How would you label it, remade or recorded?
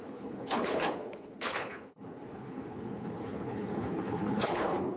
remade